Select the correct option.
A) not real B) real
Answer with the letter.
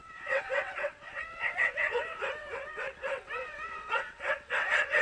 A